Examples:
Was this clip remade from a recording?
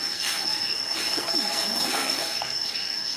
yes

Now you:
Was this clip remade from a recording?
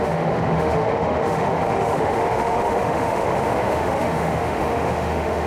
yes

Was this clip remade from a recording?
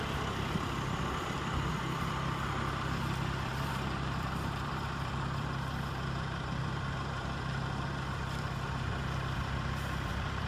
yes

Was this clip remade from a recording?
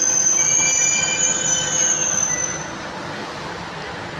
no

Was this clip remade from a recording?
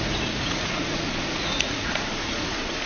yes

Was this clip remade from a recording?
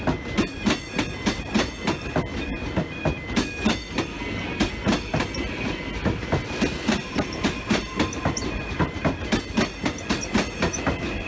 no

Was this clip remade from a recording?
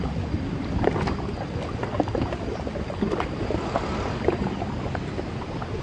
no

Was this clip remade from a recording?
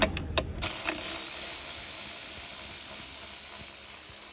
no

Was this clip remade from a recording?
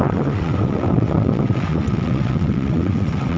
yes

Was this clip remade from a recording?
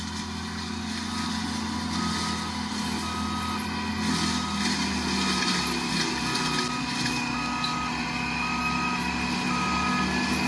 no